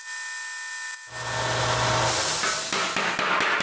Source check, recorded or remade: recorded